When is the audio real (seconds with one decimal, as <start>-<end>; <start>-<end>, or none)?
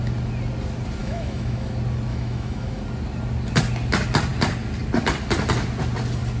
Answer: 0.0-1.0; 1.7-2.1; 2.8-6.4